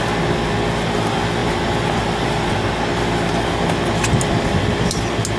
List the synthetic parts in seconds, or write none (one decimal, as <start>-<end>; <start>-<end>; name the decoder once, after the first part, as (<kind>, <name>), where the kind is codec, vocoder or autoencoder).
none